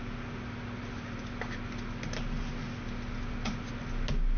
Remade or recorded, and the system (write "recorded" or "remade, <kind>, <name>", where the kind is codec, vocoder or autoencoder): recorded